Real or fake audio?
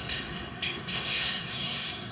fake